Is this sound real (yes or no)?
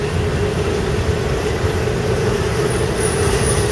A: yes